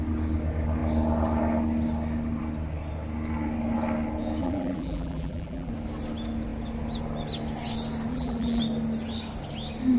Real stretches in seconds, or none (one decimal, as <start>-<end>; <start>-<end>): 0.0-4.4; 5.7-8.1; 8.6-10.0

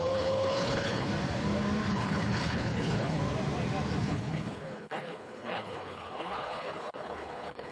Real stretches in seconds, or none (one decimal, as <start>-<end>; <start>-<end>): 1.1-1.9; 3.2-4.0

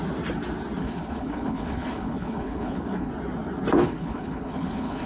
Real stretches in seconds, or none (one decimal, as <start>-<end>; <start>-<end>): 0.0-0.8; 3.1-3.8

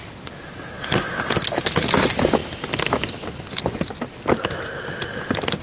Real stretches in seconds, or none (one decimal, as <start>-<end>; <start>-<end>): 0.0-5.6

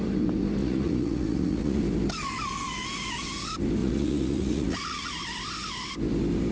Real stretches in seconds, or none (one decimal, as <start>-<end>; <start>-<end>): 0.0-0.6; 1.8-3.8; 5.2-6.5

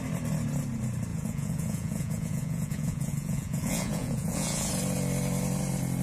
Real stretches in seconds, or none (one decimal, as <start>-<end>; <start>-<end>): 0.0-1.1; 4.7-6.0

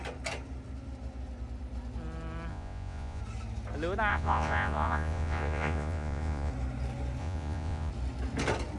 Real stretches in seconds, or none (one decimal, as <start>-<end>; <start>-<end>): 0.0-2.5; 3.2-4.1; 6.5-7.2; 7.9-8.8